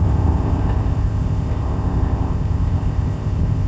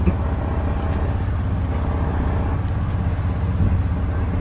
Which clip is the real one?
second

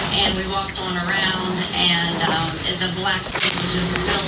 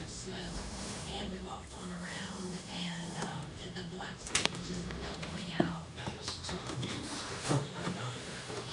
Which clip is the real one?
first